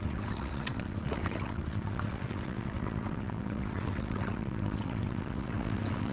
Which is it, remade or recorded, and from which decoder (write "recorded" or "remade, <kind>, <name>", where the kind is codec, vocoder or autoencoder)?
remade, vocoder, WaveNeXt